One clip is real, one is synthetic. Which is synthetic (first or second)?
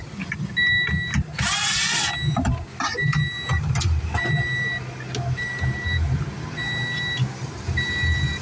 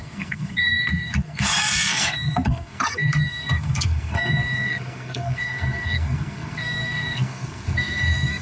second